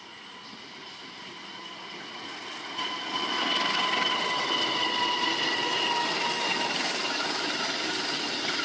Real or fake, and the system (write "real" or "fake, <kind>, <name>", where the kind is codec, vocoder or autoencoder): real